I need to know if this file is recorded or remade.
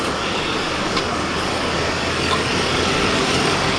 remade